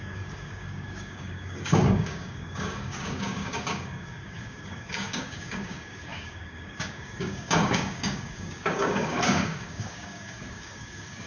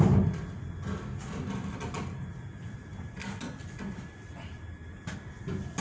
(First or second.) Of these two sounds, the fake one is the first